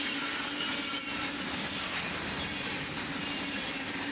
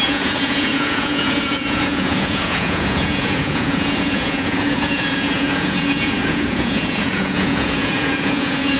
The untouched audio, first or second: first